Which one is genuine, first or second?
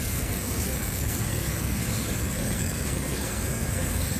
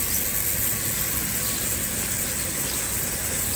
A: second